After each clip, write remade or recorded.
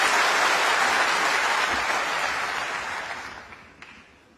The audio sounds recorded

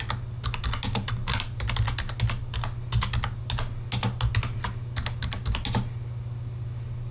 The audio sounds recorded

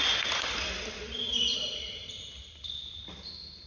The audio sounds recorded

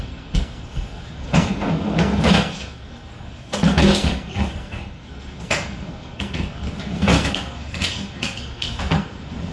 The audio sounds remade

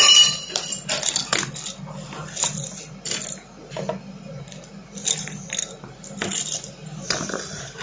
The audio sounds recorded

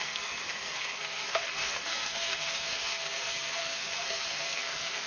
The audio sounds remade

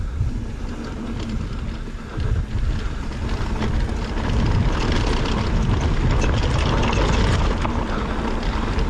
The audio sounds recorded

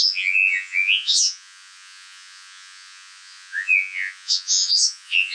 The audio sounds remade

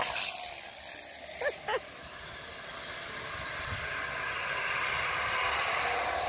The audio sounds recorded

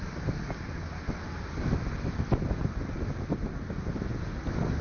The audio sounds recorded